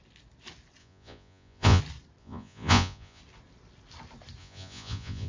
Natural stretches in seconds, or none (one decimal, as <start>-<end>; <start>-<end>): 0.0-0.8; 1.8-2.2; 3.2-4.4